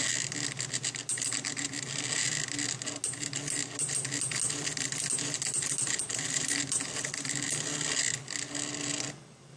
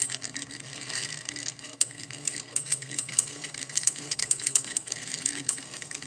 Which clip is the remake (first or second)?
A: second